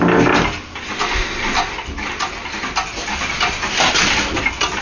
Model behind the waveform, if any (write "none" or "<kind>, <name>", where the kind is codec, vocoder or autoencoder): none